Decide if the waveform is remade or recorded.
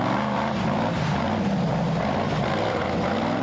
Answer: recorded